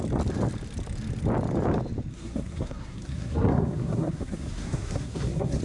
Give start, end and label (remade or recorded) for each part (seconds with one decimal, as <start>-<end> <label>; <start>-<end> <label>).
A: 0.0-2.1 recorded; 2.1-5.6 remade